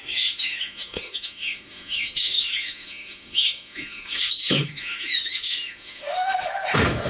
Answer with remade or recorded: remade